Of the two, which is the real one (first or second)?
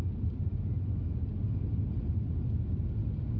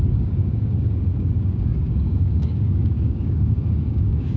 first